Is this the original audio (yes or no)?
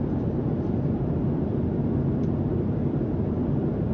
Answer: yes